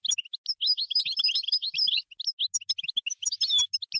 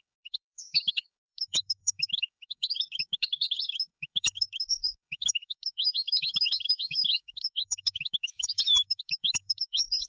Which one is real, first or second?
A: first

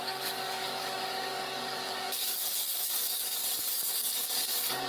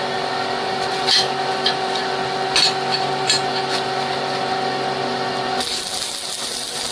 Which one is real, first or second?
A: second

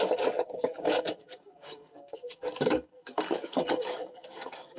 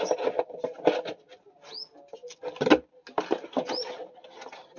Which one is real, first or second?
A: second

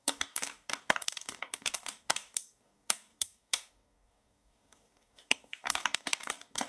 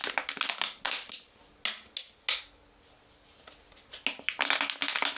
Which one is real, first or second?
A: second